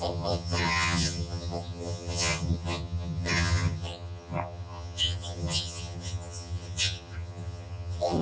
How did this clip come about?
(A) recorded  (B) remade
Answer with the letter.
B